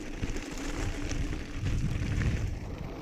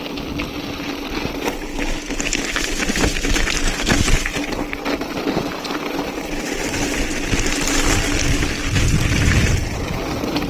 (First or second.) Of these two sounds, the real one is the second